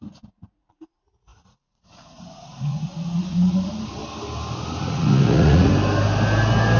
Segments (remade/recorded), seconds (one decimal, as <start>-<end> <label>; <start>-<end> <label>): 0.0-4.0 remade; 4.0-4.8 recorded; 4.8-5.7 remade; 5.7-6.8 recorded